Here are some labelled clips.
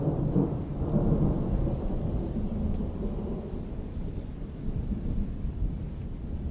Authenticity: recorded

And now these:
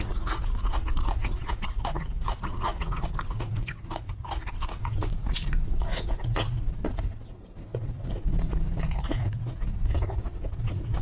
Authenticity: remade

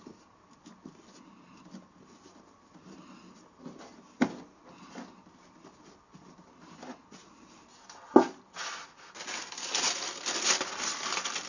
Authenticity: recorded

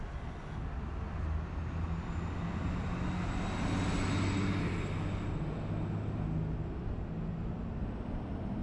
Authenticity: recorded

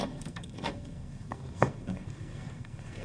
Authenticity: remade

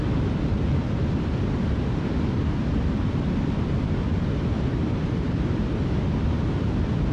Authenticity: recorded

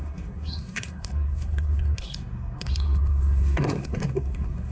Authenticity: remade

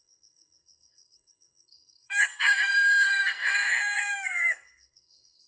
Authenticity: remade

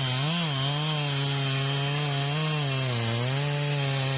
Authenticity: recorded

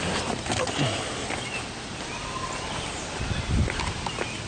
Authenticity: recorded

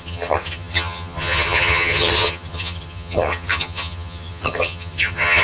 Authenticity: remade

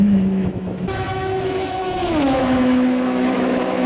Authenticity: remade